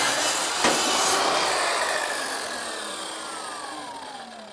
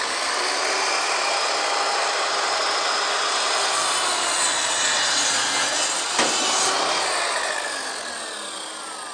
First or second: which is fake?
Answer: first